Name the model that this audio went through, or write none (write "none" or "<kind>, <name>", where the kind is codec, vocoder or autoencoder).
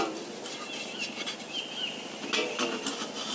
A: none